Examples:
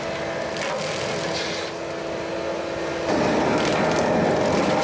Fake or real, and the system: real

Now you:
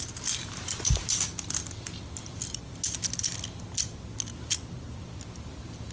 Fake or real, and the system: real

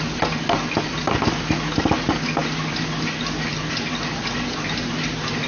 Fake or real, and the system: real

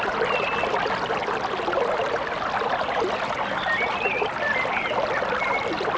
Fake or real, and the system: real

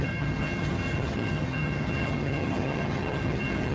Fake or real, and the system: fake, vocoder, HiFi-GAN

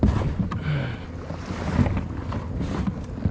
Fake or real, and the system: real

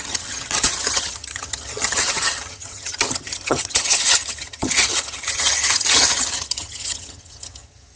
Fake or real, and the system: fake, vocoder, HiFi-GAN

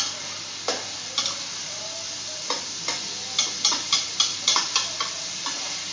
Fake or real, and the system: real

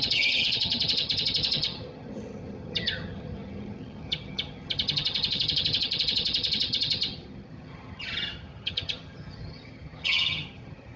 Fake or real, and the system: fake, vocoder, HiFi-GAN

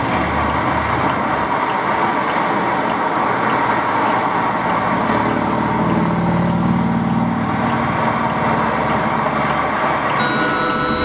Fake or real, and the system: real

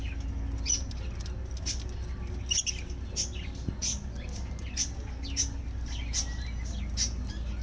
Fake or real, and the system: real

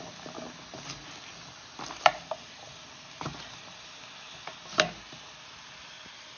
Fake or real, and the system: real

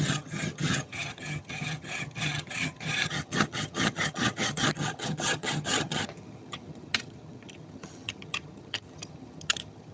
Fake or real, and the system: fake, vocoder, HiFi-GAN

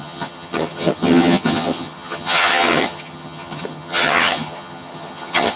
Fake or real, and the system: fake, vocoder, HiFi-GAN